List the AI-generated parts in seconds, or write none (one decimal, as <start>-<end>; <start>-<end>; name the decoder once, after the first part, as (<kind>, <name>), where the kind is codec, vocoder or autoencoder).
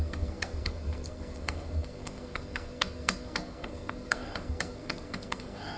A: 0.0-5.8 (codec, SNAC)